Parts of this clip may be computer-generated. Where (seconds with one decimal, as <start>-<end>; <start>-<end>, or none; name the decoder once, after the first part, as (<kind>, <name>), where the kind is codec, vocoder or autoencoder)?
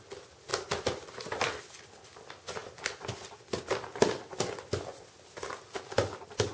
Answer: none